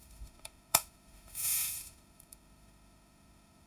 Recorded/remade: remade